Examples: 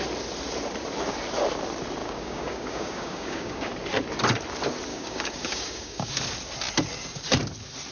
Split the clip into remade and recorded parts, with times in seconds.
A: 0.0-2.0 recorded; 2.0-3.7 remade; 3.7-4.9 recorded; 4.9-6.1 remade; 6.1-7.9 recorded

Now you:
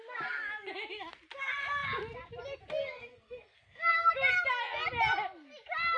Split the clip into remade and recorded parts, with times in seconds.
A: 0.0-2.8 recorded; 2.8-4.1 remade; 4.1-6.0 recorded